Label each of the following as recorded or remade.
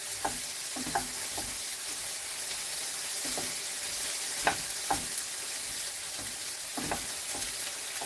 recorded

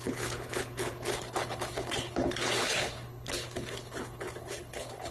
remade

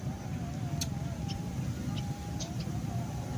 recorded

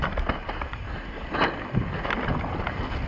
recorded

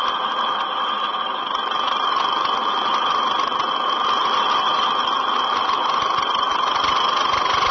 recorded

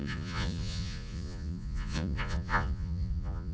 remade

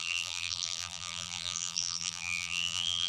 remade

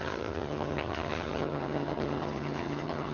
remade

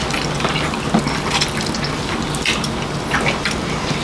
recorded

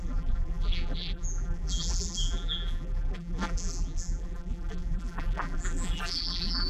remade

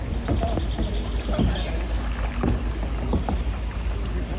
recorded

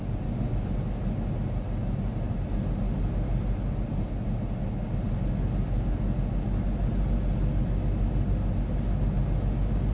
recorded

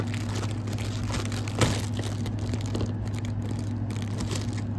recorded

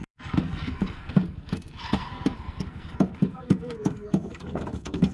remade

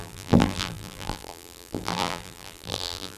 remade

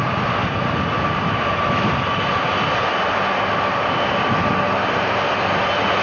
recorded